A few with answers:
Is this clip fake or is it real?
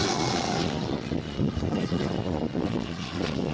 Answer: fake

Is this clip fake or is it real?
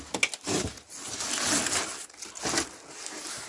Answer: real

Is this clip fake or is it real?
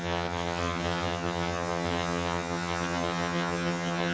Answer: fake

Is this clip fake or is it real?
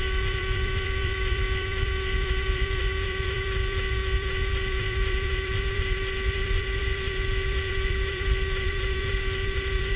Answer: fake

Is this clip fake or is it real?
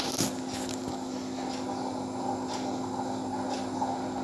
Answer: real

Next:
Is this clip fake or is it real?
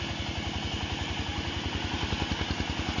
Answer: real